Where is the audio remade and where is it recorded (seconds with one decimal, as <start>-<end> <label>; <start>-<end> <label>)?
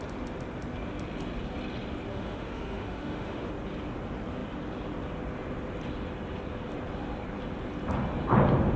0.0-2.1 recorded; 2.1-3.5 remade; 3.5-8.8 recorded